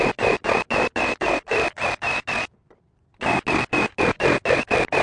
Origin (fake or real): real